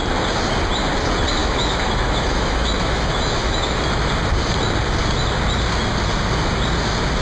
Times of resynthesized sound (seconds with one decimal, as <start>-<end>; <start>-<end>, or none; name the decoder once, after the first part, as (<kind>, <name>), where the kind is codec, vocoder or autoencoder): 1.4-4.1 (autoencoder, DAC-VAE)